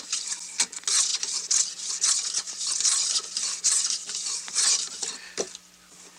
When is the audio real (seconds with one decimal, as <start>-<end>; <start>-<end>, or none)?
0.0-6.2